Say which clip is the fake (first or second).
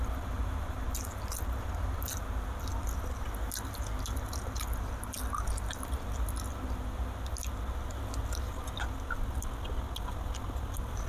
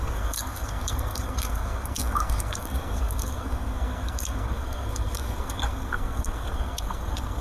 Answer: second